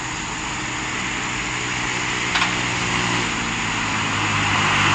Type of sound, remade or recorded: recorded